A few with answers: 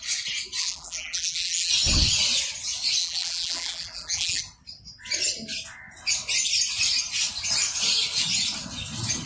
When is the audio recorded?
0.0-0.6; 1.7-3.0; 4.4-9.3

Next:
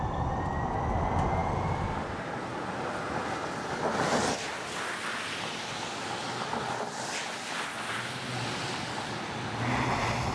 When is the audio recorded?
0.0-10.3

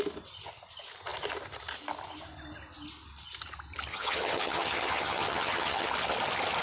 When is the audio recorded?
0.0-3.9; 5.9-6.6

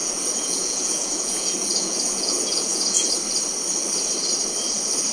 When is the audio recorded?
3.1-5.1

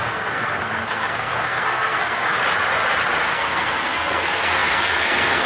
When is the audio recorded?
2.3-3.3